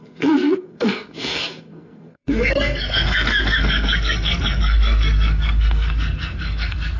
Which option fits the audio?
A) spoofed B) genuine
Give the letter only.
A